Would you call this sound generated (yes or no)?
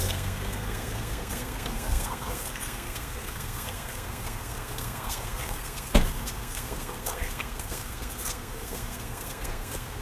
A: yes